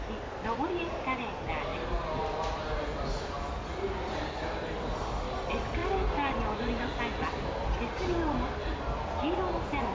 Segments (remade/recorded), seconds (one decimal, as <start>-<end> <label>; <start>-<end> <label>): 0.0-9.9 recorded